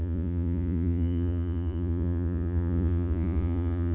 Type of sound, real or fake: fake